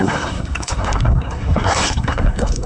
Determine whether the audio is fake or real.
fake